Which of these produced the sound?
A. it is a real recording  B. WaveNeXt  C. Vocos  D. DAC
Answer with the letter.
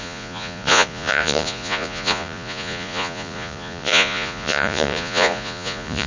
C